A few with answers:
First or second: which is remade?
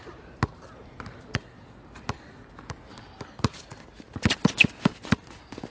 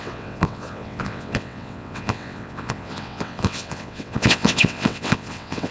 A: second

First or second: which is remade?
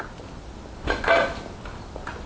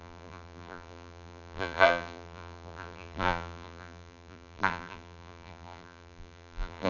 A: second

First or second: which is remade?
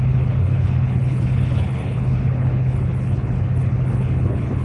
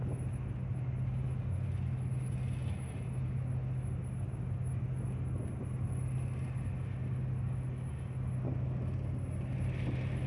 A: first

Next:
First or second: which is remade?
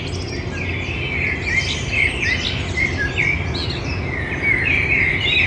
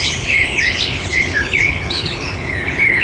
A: second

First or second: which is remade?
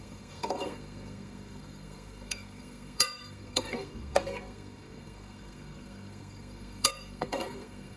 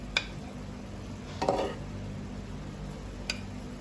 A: first